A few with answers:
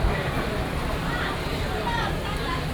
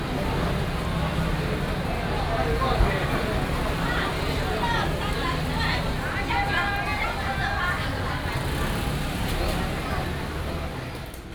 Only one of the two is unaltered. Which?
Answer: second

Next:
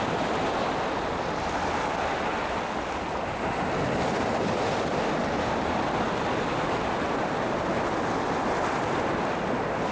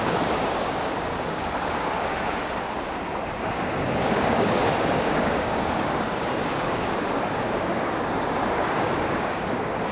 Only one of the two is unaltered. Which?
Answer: first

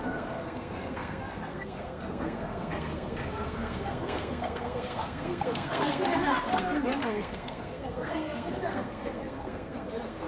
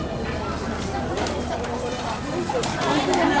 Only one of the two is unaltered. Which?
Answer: second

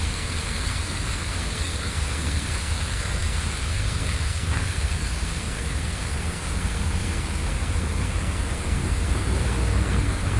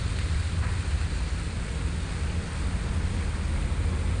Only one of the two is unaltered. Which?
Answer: second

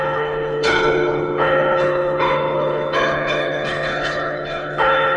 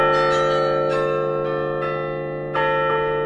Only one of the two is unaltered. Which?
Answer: second